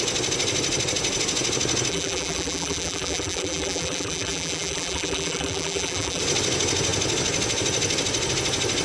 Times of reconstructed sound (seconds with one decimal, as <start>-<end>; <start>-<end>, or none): 1.9-6.2